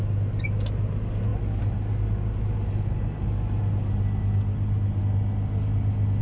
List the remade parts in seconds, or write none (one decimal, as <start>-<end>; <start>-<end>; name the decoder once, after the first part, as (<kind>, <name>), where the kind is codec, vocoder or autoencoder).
none